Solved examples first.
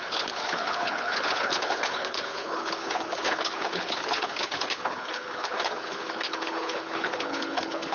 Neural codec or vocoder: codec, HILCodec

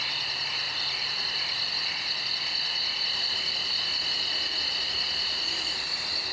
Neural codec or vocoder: none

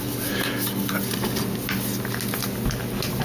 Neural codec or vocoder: none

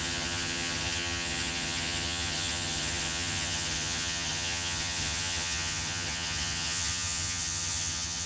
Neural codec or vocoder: vocoder, HiFi-GAN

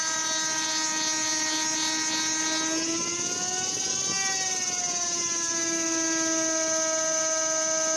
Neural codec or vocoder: none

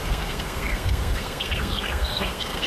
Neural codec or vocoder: codec, SNAC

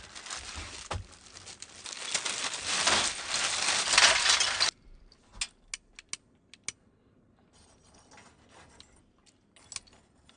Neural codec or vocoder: none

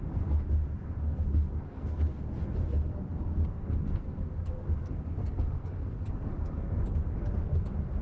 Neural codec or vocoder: codec, SNAC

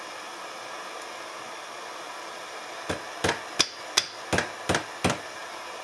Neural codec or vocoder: none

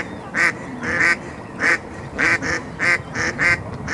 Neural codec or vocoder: none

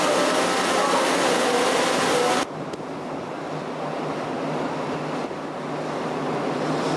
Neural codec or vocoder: none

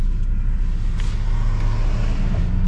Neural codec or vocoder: none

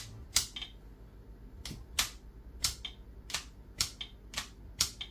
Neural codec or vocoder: none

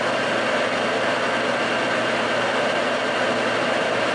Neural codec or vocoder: none